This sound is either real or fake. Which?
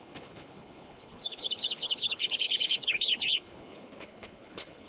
fake